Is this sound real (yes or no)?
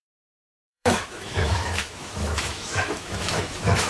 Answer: no